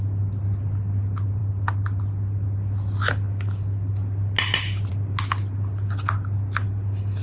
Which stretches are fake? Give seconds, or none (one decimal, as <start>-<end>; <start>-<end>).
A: none